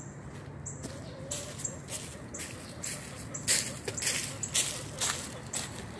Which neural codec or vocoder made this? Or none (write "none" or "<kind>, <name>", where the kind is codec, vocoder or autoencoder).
none